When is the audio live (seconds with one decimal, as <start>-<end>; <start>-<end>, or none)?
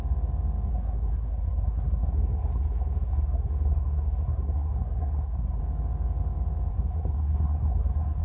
0.0-0.7; 5.6-6.7